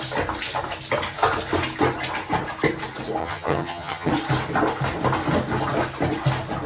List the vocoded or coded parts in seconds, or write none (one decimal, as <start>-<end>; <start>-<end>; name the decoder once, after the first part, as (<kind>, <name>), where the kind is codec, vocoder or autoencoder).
3.2-4.1 (vocoder, HiFi-GAN)